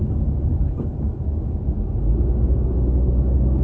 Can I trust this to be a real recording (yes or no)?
yes